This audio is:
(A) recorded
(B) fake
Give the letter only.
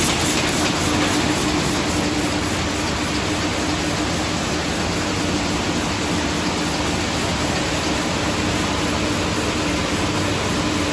A